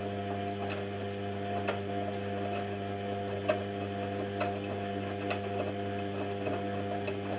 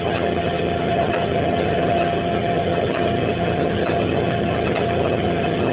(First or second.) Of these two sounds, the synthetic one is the second